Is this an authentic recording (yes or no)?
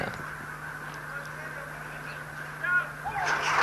yes